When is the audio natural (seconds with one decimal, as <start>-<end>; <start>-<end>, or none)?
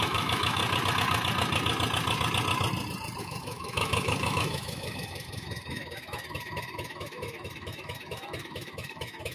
0.6-3.2